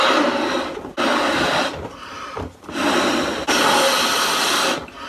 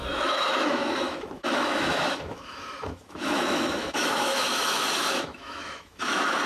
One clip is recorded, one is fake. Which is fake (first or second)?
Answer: second